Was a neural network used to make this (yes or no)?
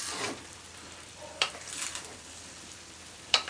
yes